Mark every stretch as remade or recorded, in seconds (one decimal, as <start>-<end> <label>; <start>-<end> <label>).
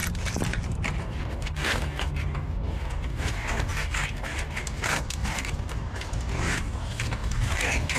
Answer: 0.0-1.0 recorded; 1.0-8.0 remade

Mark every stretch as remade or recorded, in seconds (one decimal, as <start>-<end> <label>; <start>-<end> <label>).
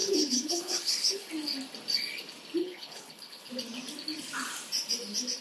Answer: 0.0-1.3 remade; 1.3-2.6 recorded; 2.6-3.5 remade; 3.5-5.4 recorded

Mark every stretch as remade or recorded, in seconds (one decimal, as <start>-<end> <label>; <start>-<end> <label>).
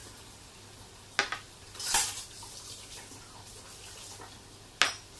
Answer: 0.0-5.2 recorded